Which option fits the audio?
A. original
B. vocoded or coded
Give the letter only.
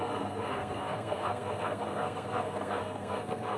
B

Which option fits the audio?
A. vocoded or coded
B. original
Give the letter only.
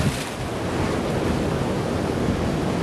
B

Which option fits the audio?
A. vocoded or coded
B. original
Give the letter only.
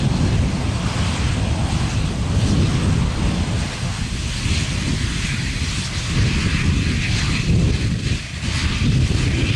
B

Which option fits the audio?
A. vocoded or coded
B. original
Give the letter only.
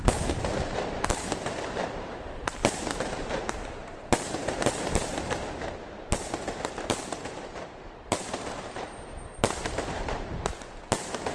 A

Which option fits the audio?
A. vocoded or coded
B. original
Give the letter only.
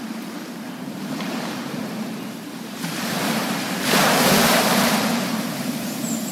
A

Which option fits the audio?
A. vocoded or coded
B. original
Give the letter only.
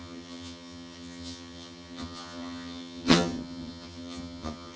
A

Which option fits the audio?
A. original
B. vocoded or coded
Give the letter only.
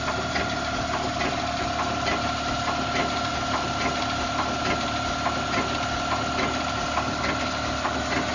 A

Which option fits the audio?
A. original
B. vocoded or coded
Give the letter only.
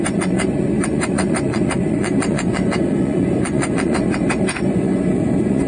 B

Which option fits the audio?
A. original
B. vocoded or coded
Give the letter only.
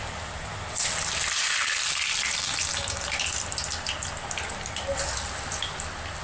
A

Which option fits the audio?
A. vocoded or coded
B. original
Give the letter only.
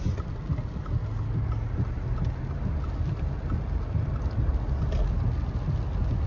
B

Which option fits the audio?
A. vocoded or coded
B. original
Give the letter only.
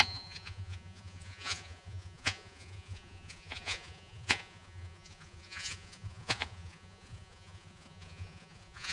A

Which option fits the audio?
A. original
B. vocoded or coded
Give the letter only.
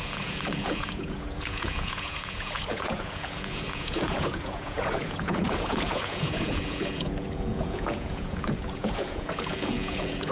B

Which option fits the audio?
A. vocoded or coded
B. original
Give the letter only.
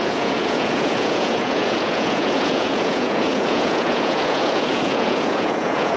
A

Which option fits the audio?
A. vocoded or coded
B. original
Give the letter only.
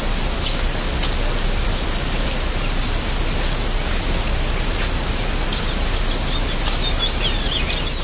B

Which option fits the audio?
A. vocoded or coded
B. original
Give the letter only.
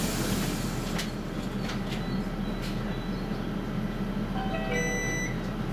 B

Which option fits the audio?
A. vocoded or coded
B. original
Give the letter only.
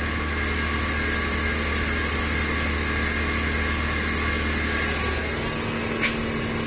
B